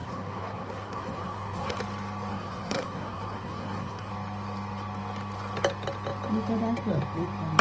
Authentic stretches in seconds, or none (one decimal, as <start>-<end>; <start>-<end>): 1.8-2.3; 4.1-7.6